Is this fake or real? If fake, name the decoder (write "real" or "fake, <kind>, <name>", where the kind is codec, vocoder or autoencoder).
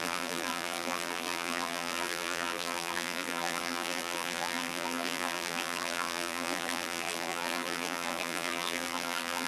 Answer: fake, vocoder, BigVGAN v2